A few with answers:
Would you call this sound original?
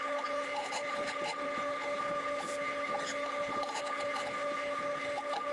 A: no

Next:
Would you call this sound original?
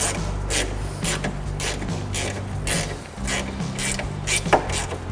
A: yes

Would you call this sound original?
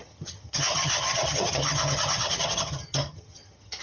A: no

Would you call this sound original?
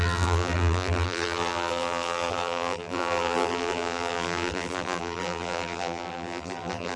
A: no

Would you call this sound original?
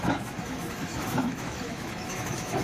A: no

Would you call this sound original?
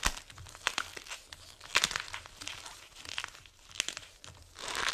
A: yes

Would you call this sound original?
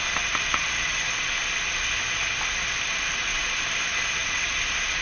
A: yes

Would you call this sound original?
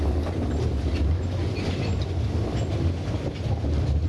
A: yes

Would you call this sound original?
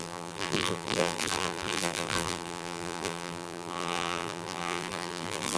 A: no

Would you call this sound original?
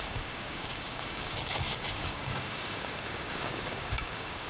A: no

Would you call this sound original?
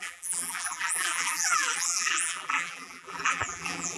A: no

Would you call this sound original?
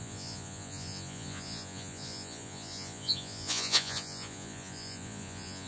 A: no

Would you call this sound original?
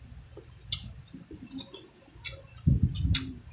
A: yes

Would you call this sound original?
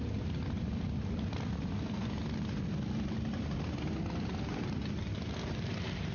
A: yes